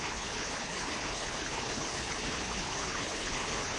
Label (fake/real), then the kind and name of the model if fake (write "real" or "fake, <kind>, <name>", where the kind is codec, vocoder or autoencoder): fake, codec, HILCodec